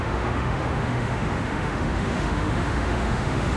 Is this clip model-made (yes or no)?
yes